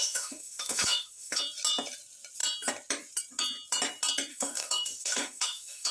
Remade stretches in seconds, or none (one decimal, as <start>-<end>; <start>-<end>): 0.0-1.4; 4.3-5.9